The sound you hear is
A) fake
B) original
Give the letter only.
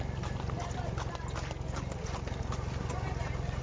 B